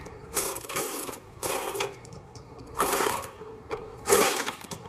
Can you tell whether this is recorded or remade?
remade